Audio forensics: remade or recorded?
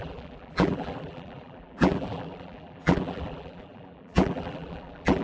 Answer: remade